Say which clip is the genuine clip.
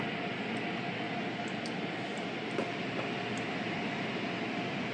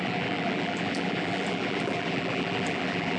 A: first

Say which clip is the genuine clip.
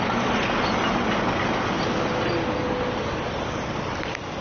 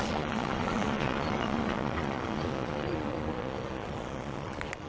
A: first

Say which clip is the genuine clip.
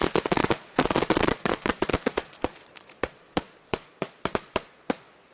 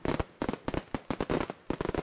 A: second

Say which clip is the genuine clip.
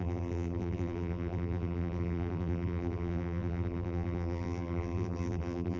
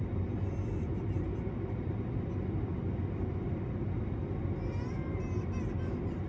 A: second